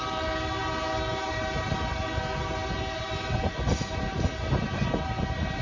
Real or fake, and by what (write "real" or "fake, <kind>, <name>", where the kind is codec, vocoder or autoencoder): real